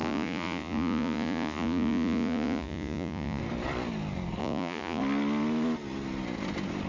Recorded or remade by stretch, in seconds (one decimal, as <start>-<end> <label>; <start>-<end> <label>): 0.0-3.4 remade; 3.4-4.4 recorded; 4.4-5.0 remade; 5.0-6.9 recorded